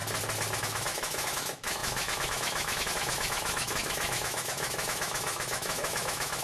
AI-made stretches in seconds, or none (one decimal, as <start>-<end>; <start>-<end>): 0.6-6.4